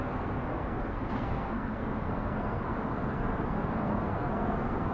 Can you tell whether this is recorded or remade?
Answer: remade